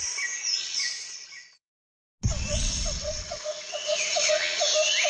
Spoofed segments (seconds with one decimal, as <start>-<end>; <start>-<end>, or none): 0.6-1.7; 2.3-4.6